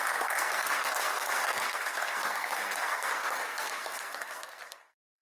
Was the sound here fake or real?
fake